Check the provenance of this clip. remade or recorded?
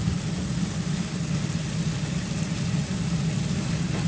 recorded